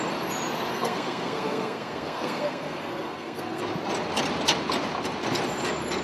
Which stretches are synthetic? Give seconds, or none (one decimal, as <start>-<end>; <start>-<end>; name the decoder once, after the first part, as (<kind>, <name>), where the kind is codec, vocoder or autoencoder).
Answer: 0.7-3.6 (codec, SNAC)